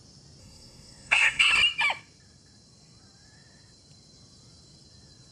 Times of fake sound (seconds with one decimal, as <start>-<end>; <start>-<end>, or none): 0.4-1.5